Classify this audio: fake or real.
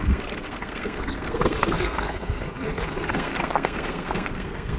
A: fake